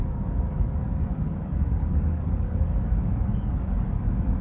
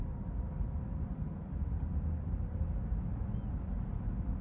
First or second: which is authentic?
second